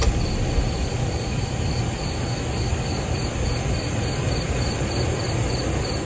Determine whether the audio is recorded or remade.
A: recorded